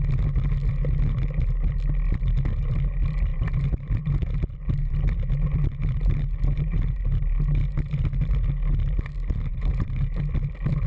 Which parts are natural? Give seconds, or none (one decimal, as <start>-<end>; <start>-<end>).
0.0-3.3; 8.5-9.5; 10.2-10.9